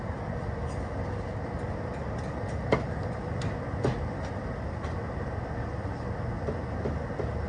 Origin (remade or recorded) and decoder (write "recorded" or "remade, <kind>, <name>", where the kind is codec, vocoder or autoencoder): recorded